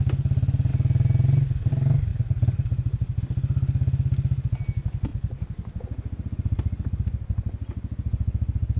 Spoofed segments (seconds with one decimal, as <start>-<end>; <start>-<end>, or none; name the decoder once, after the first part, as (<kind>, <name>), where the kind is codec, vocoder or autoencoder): 2.1-3.2 (vocoder, BigVGAN v2)